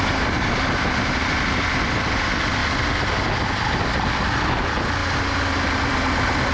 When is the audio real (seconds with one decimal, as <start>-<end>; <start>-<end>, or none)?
0.0-6.5